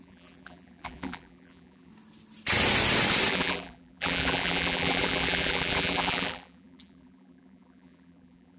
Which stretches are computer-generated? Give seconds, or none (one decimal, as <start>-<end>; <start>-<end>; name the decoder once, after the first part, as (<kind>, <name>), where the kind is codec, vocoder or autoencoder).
0.0-1.9 (vocoder, BigVGAN v2); 3.3-8.6